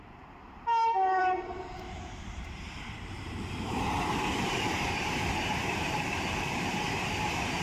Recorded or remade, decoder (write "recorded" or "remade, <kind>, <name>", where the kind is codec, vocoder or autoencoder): remade, vocoder, BigVGAN v2